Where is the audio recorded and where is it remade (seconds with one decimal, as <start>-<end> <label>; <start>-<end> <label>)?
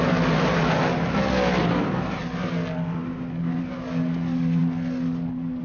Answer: 0.0-1.6 recorded; 1.6-2.2 remade; 2.2-5.6 recorded